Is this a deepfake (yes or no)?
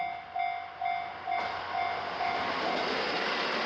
no